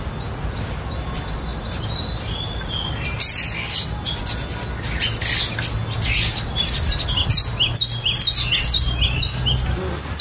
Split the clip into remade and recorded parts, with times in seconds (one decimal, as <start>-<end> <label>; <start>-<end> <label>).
0.0-10.2 recorded